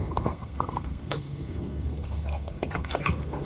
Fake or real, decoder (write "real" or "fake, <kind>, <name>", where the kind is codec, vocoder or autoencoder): fake, codec, SNAC